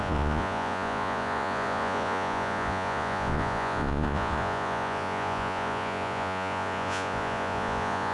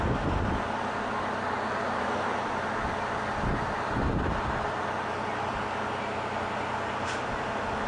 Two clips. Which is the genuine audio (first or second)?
second